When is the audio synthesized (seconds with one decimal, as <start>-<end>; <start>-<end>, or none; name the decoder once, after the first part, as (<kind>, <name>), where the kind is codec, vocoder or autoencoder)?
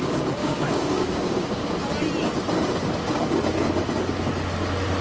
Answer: 0.4-1.6 (codec, DAC)